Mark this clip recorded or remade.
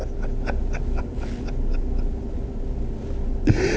recorded